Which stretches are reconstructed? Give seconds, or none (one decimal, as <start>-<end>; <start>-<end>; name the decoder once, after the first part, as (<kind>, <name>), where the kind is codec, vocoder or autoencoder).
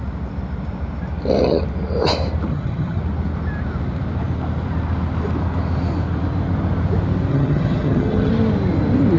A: 2.5-3.0 (vocoder, HiFi-GAN); 7.3-8.3